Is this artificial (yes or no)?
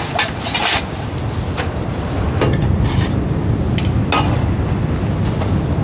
no